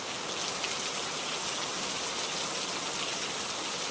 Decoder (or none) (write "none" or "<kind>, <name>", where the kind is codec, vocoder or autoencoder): none